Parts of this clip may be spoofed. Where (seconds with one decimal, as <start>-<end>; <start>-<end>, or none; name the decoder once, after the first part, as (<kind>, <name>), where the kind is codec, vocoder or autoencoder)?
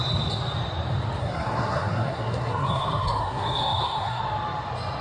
1.2-4.2 (codec, SNAC)